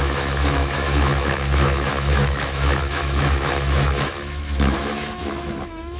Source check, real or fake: fake